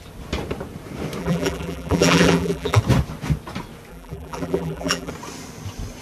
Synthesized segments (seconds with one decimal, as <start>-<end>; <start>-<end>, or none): 1.2-2.8; 3.9-5.1